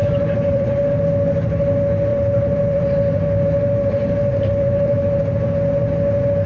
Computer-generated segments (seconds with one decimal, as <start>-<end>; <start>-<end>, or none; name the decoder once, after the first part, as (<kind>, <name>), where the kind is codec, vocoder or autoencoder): 0.0-1.0 (vocoder, BigVGAN v2); 2.1-5.2